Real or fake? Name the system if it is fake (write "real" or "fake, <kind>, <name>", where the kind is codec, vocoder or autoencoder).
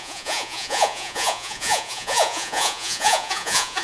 fake, vocoder, Vocos